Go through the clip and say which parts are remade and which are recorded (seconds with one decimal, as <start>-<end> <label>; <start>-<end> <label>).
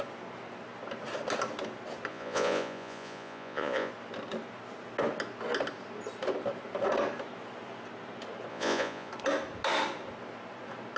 0.0-2.1 recorded; 2.1-3.9 remade; 3.9-8.5 recorded; 8.5-9.1 remade; 9.1-11.0 recorded